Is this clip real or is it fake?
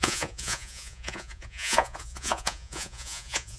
fake